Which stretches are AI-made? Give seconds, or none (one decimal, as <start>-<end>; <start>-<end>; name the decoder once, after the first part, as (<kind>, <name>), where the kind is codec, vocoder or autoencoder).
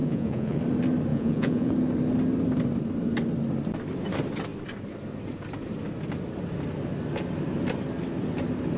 0.0-0.6 (vocoder, Vocos); 1.1-1.7